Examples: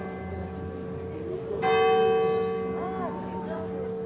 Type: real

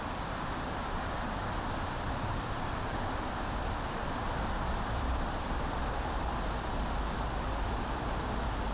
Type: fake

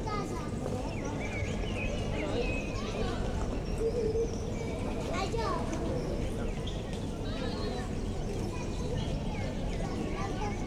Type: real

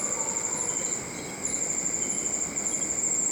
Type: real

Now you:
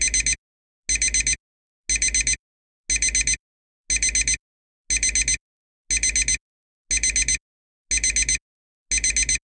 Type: real